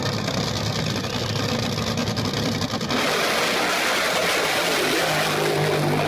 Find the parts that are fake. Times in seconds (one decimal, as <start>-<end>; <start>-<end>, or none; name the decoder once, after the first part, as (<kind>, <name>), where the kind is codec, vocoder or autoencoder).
none